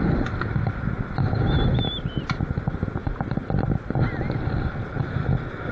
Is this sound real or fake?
real